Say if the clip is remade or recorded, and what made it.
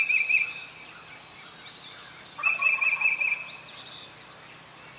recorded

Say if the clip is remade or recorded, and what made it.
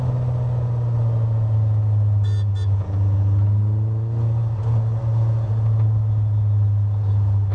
recorded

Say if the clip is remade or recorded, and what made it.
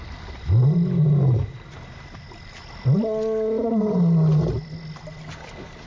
recorded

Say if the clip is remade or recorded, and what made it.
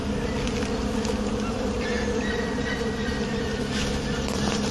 remade, vocoder, BigVGAN v2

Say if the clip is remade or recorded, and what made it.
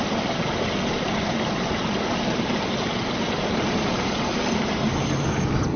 recorded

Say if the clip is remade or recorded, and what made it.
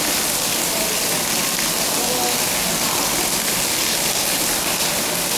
recorded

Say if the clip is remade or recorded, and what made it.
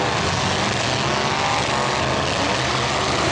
recorded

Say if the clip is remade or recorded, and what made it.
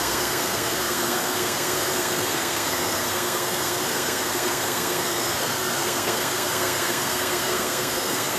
remade, codec, SNAC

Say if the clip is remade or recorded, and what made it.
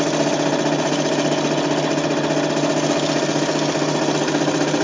recorded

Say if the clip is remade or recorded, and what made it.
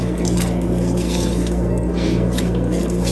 remade, codec, SNAC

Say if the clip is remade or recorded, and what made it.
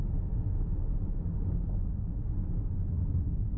recorded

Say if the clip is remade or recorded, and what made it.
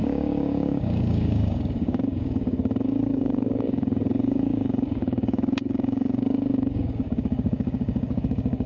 remade, codec, DAC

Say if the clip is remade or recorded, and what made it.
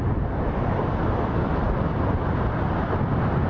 recorded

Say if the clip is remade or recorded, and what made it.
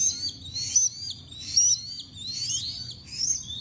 recorded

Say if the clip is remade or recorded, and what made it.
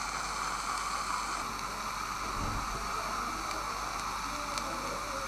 recorded